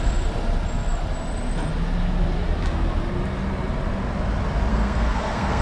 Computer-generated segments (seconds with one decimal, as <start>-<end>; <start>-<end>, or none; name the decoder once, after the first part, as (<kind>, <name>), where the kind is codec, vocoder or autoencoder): 4.7-5.6 (codec, SNAC)